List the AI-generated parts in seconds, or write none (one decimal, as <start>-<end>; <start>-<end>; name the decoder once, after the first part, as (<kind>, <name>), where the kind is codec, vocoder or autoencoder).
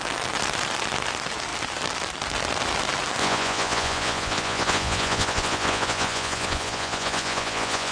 3.2-7.9 (vocoder, Vocos)